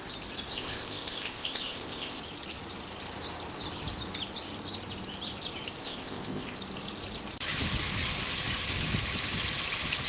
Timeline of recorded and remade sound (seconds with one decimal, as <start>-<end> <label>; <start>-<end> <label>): 0.0-0.5 recorded; 0.5-2.2 remade; 2.2-5.8 recorded; 5.8-6.6 remade; 6.6-10.1 recorded